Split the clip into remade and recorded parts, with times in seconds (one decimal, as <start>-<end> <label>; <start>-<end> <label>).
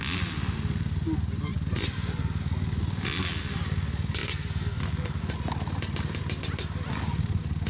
0.0-7.7 recorded